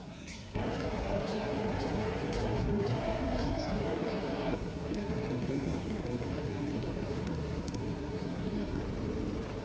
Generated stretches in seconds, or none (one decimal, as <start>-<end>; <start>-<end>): 0.0-8.8